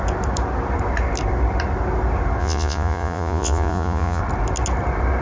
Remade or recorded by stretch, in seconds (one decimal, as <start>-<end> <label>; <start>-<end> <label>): 0.0-2.4 recorded; 2.4-4.2 remade; 4.2-5.2 recorded

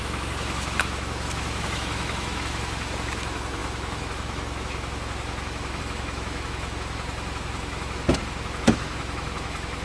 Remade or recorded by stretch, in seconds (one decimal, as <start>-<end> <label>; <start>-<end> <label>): 0.0-9.8 remade

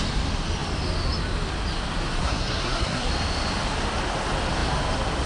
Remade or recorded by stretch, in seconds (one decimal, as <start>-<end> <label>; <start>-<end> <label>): 0.0-2.2 recorded; 2.2-3.1 remade; 3.1-5.3 recorded